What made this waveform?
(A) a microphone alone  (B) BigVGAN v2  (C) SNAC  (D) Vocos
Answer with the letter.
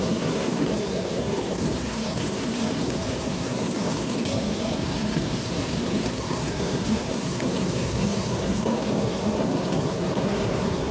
C